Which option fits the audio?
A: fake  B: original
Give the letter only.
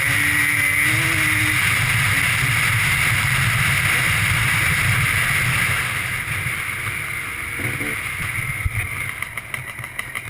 B